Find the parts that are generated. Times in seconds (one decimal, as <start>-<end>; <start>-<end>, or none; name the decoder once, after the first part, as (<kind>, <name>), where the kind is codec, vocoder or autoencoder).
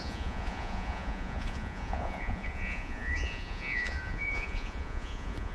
0.0-5.5 (vocoder, Vocos)